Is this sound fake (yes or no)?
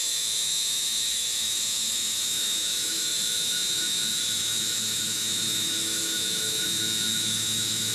yes